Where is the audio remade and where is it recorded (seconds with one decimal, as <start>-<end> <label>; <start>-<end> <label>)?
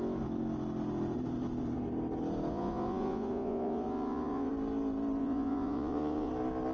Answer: 0.0-2.5 recorded; 2.5-4.5 remade; 4.5-5.2 recorded; 5.2-6.3 remade; 6.3-6.7 recorded